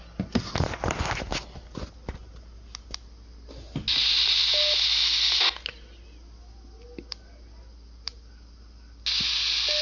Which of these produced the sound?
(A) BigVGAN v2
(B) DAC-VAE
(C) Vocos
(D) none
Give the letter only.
D